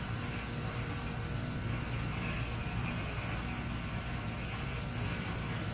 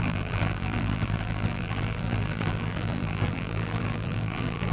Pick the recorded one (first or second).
first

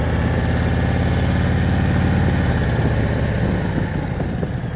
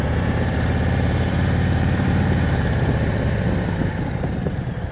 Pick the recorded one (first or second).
first